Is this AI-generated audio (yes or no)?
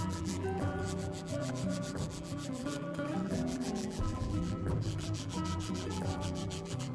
yes